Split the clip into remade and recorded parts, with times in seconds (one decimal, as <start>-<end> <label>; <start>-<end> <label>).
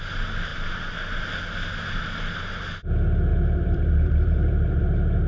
0.0-0.5 recorded; 0.5-1.1 remade; 1.1-3.3 recorded; 3.3-4.8 remade; 4.8-5.3 recorded